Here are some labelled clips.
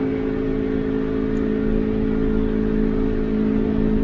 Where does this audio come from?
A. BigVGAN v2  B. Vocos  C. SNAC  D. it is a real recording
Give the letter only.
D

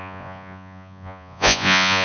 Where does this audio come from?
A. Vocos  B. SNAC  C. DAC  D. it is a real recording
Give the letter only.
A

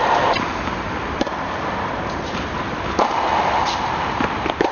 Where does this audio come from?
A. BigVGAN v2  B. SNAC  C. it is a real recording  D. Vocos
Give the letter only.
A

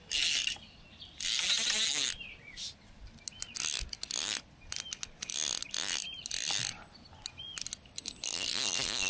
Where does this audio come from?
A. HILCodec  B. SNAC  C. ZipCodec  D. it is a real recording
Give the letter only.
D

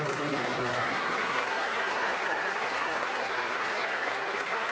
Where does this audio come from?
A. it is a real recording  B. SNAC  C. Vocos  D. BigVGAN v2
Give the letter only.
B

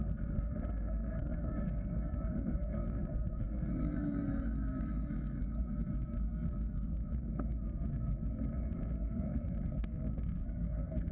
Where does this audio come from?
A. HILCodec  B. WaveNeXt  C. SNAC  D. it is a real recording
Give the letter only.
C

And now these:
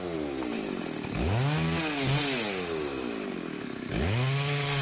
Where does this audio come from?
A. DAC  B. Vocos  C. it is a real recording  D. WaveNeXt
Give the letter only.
C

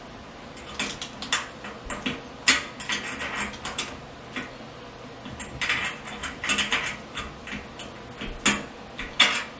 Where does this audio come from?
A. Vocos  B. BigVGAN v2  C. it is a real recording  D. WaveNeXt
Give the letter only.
C